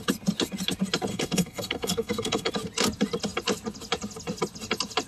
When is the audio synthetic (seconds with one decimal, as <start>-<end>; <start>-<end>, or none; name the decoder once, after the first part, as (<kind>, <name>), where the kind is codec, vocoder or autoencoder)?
1.1-2.5 (codec, SNAC)